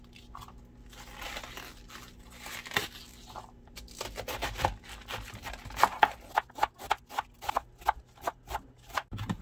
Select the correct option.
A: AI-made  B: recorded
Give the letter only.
B